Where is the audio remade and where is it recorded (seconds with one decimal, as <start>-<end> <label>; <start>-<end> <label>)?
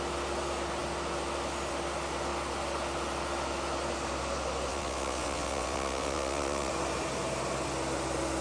0.0-4.7 recorded; 4.7-6.7 remade; 6.7-8.4 recorded